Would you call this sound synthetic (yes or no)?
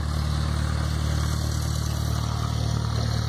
no